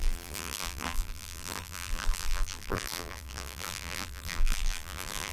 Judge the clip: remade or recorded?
remade